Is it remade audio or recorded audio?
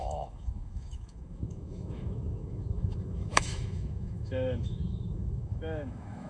remade